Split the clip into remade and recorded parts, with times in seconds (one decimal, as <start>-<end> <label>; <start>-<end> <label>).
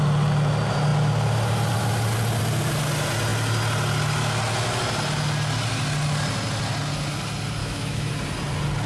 0.0-7.6 recorded; 7.6-8.1 remade; 8.1-8.9 recorded